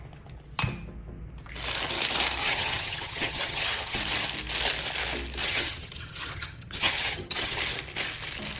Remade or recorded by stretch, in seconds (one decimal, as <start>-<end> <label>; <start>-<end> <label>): 0.0-2.4 recorded; 2.4-4.0 remade; 4.0-5.4 recorded; 5.4-7.6 remade; 7.6-8.6 recorded